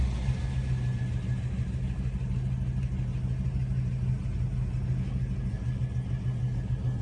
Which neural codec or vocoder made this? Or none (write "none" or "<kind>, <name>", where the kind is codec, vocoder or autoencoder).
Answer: none